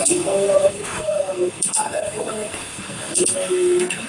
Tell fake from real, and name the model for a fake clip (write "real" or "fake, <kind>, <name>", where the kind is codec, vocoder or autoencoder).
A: fake, codec, SNAC